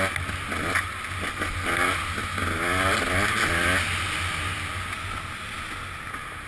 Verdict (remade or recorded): recorded